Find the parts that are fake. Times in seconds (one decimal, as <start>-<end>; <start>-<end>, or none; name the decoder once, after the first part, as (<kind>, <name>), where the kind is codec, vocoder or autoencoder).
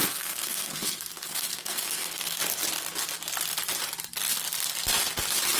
0.0-2.4 (codec, SNAC)